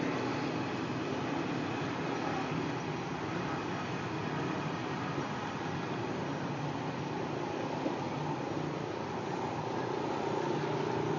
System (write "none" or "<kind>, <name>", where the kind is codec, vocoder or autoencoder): none